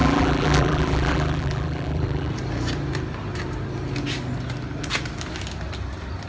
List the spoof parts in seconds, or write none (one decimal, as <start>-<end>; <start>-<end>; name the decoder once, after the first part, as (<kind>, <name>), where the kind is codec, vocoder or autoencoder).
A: 0.0-2.3 (vocoder, BigVGAN v2)